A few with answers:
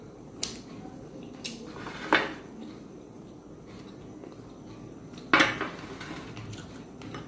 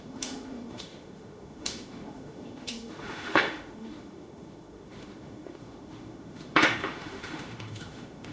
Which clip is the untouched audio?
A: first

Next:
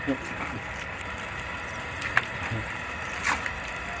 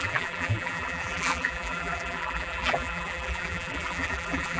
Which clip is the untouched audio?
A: first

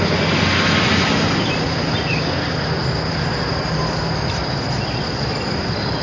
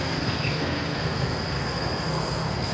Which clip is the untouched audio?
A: first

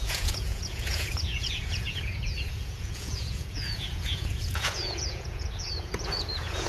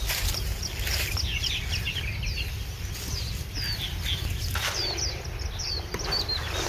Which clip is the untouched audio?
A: second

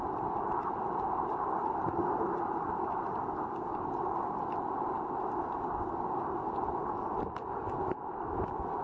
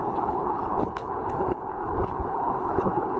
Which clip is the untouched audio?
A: first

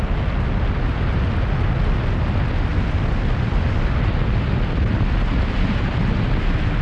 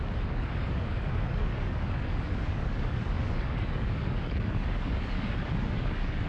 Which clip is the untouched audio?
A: first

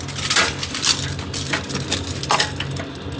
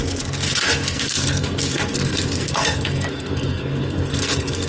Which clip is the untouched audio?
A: first